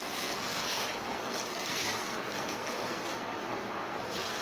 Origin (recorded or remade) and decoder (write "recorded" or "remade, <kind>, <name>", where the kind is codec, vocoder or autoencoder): remade, codec, SNAC